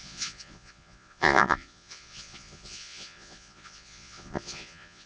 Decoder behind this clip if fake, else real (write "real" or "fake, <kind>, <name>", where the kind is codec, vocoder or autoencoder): fake, vocoder, Vocos